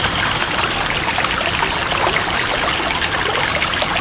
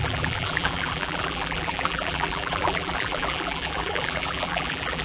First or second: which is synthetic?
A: second